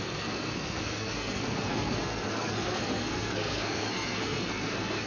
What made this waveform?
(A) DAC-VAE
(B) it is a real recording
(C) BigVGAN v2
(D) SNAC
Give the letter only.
D